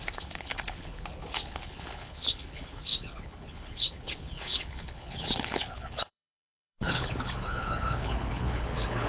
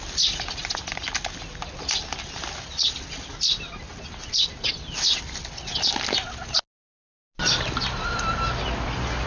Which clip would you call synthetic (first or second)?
first